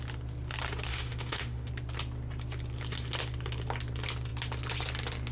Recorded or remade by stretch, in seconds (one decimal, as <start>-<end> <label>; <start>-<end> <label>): 0.0-0.9 recorded; 0.9-1.7 remade; 1.7-5.3 recorded